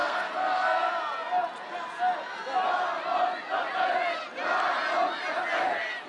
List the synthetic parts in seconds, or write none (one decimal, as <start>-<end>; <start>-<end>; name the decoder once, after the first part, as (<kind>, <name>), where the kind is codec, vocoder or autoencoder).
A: 0.0-0.9 (codec, SNAC)